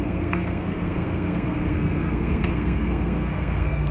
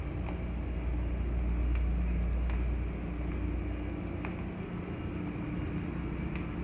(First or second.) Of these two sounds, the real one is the second